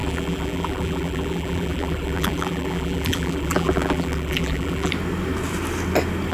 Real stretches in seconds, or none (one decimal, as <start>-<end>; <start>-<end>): 4.9-6.3